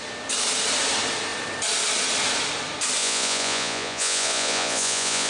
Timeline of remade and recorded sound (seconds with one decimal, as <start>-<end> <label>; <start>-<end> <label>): 0.0-3.0 recorded; 3.0-5.3 remade

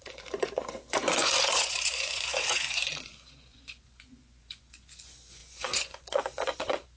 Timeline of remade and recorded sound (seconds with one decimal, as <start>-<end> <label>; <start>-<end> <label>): 0.0-7.0 remade

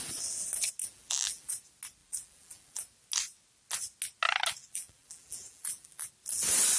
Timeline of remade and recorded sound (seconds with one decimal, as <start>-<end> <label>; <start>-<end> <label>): 0.0-0.8 recorded; 0.8-1.5 remade; 1.5-2.0 recorded; 2.0-2.8 remade; 2.8-4.6 recorded; 4.6-6.1 remade; 6.1-6.8 recorded

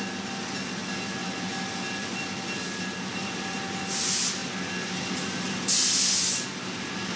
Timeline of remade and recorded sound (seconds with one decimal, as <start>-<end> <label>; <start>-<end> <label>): 0.0-7.2 recorded

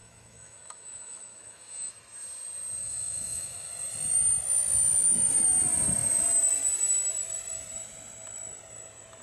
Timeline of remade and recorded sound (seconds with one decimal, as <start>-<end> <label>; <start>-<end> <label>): 0.0-1.9 remade; 1.9-2.8 recorded; 2.8-3.7 remade; 3.7-9.2 recorded

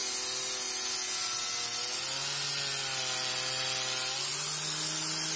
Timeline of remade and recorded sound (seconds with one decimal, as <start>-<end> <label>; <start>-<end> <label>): 0.0-5.4 recorded

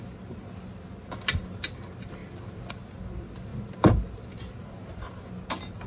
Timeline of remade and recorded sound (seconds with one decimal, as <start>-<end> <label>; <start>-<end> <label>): 0.0-5.9 recorded